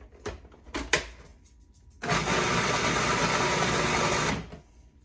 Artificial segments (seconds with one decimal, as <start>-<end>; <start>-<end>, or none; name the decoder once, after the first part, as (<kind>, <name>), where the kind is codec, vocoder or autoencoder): none